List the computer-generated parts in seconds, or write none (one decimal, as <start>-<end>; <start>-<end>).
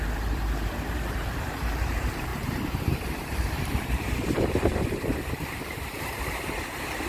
0.0-7.1